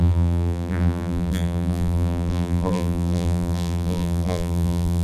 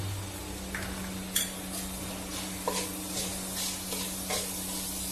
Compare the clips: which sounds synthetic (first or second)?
first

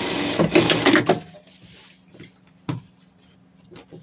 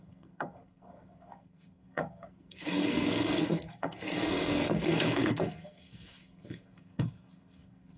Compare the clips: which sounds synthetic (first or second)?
second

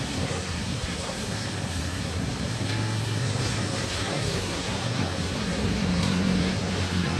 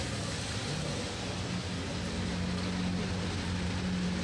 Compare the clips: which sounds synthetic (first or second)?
first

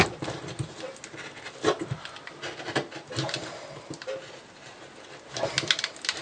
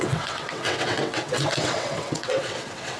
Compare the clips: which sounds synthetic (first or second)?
second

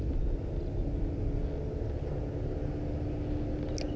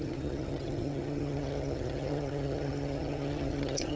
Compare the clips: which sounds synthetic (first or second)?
second